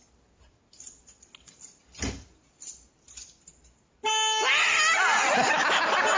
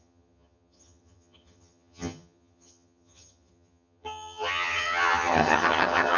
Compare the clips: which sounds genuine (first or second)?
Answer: first